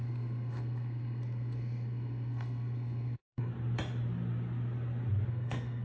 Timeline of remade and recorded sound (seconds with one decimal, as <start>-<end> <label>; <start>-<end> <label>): 0.0-3.5 remade; 3.5-5.3 recorded; 5.3-5.8 remade

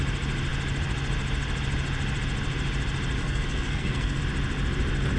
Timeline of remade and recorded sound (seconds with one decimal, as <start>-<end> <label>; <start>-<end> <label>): 0.0-3.2 recorded; 3.2-4.2 remade; 4.2-5.2 recorded

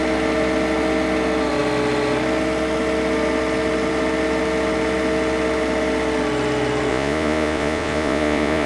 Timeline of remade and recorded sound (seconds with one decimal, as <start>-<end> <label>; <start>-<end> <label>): 0.0-6.9 recorded; 6.9-8.7 remade

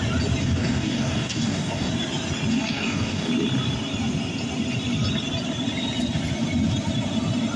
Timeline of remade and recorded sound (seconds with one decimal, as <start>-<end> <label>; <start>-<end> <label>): 0.0-0.4 recorded; 0.4-1.9 remade; 1.9-2.5 recorded; 2.5-3.3 remade; 3.3-7.6 recorded